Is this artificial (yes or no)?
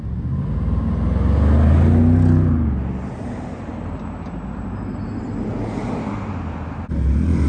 no